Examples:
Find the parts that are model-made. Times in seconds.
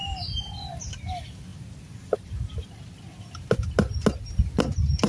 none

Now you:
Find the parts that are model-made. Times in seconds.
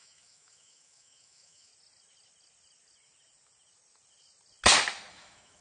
0.0-1.7 (autoencoder, DAC-VAE); 5.1-5.6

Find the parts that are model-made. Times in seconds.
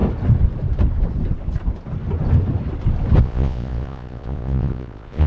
3.2-5.3 (vocoder, Vocos)